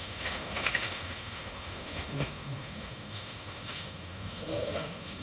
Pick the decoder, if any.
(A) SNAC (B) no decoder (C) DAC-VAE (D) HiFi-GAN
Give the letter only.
C